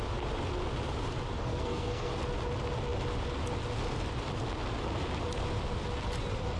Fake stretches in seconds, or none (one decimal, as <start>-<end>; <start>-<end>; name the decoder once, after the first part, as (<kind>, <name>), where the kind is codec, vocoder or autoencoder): 1.4-2.1 (codec, SNAC)